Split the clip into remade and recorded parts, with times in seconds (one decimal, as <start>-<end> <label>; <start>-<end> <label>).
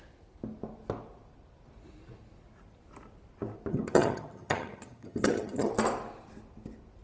0.0-3.7 recorded; 3.7-5.7 remade; 5.7-7.0 recorded